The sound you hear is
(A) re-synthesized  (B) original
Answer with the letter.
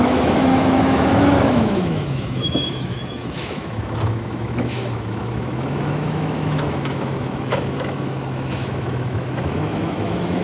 A